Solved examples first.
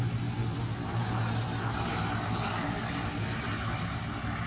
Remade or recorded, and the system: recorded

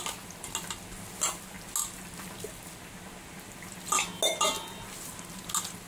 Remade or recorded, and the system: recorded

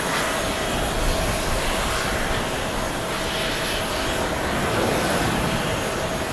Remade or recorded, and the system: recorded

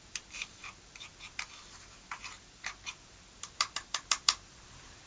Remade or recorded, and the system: remade, vocoder, BigVGAN v2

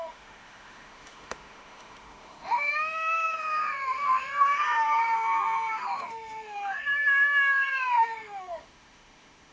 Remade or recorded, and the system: remade, autoencoder, DAC-VAE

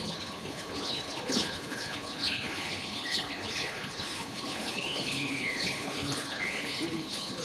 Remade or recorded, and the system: remade, codec, HILCodec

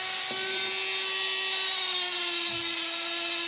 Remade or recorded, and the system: recorded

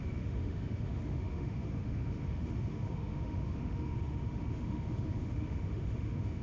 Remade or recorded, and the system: remade, autoencoder, DAC-VAE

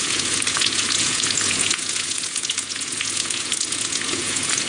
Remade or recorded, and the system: remade, vocoder, Vocos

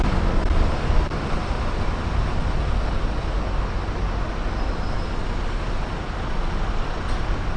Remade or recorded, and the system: recorded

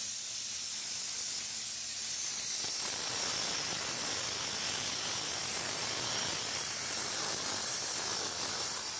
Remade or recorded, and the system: recorded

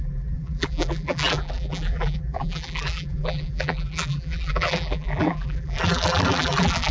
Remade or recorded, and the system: remade, vocoder, BigVGAN v2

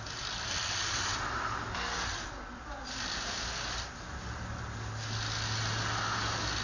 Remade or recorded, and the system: recorded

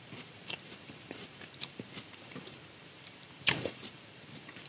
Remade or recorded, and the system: remade, vocoder, BigVGAN v2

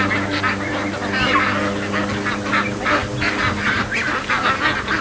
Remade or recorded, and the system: recorded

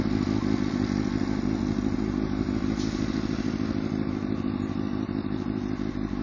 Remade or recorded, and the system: recorded